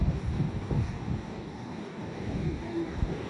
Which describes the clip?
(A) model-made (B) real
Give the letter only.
A